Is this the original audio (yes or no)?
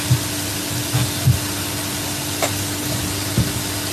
yes